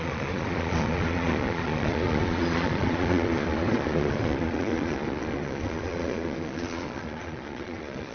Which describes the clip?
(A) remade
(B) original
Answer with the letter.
A